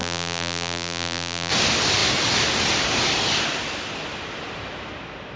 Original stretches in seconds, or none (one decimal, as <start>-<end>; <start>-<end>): 1.5-5.4

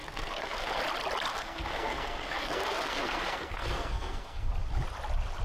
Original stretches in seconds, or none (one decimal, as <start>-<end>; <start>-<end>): 0.8-1.3; 4.5-5.4

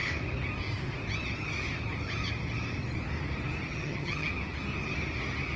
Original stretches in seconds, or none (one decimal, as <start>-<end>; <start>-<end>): 0.0-3.7; 4.3-5.6

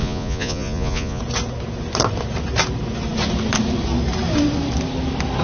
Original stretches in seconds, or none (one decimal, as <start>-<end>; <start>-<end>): 1.2-5.4

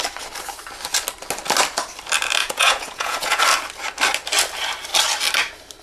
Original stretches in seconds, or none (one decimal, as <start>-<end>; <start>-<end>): 0.0-2.4; 3.4-5.8

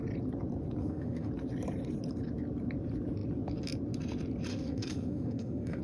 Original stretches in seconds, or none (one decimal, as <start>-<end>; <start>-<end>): 0.0-0.8; 1.3-4.5